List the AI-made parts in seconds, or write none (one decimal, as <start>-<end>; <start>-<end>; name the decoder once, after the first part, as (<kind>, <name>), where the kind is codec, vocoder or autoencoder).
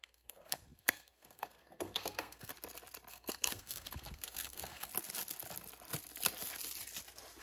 0.0-2.5 (codec, SNAC); 3.1-4.9